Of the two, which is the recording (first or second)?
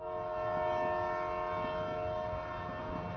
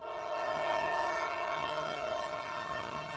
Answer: first